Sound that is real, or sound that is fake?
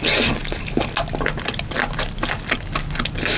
real